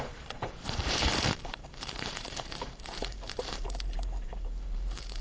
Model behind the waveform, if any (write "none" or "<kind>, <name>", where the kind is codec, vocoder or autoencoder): vocoder, BigVGAN v2